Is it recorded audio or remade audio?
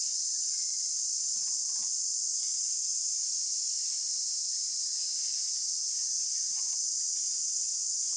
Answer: recorded